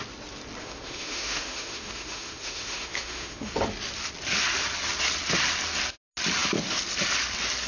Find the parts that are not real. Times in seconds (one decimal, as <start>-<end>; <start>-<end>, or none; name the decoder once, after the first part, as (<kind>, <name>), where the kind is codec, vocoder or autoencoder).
0.6-3.5 (autoencoder, DAC-VAE)